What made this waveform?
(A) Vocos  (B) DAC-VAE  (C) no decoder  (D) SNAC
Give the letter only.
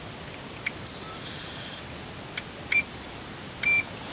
C